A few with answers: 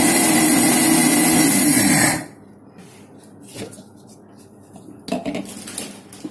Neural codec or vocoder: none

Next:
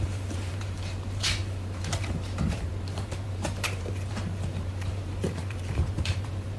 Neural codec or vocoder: vocoder, BigVGAN v2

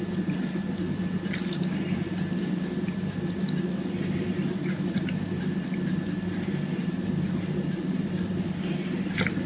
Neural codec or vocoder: none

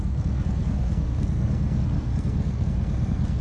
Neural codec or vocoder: codec, SNAC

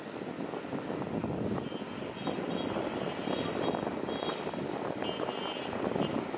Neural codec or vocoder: none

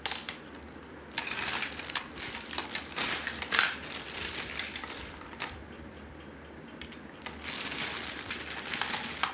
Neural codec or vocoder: none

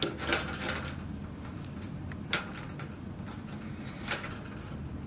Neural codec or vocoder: none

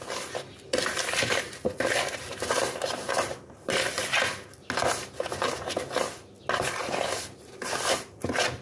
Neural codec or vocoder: none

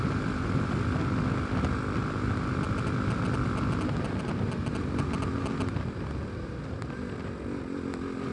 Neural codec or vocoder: none